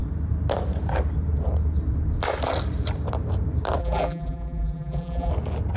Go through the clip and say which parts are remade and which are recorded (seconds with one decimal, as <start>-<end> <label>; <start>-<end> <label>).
0.0-3.8 recorded; 3.8-5.3 remade; 5.3-5.8 recorded